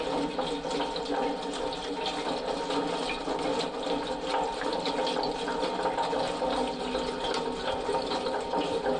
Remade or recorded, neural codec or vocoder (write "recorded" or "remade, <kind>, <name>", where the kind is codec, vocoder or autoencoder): recorded